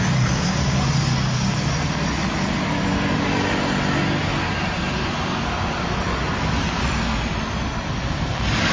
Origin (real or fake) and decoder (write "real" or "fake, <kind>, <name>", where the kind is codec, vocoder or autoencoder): real